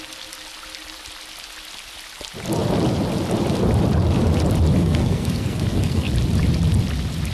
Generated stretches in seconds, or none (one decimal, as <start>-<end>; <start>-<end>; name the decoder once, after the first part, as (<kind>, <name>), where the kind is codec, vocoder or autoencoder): 4.8-6.1 (codec, SNAC)